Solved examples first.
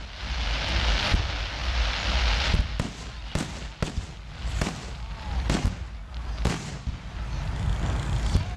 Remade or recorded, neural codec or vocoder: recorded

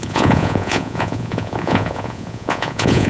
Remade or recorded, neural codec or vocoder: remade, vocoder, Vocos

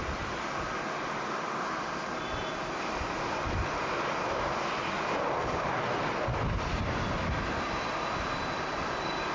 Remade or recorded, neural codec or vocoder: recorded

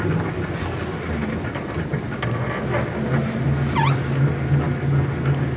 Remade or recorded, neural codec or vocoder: recorded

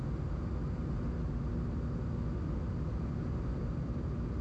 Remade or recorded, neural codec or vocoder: recorded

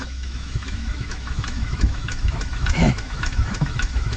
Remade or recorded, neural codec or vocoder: remade, autoencoder, DAC-VAE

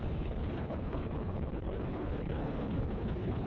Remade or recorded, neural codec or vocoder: remade, codec, HILCodec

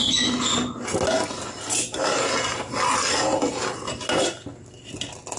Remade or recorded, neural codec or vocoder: recorded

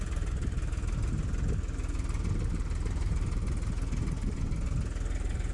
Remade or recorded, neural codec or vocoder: recorded